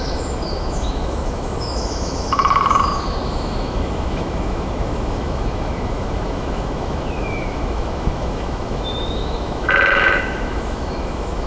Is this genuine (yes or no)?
no